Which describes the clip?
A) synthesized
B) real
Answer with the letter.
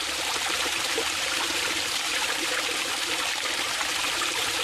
A